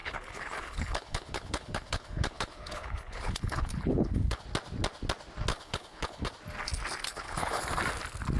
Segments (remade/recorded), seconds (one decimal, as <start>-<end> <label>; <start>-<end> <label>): 0.0-4.4 remade; 4.4-5.5 recorded; 5.5-6.3 remade; 6.3-7.1 recorded; 7.1-7.6 remade; 7.6-8.4 recorded